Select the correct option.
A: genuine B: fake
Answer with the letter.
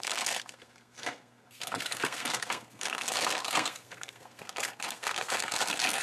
B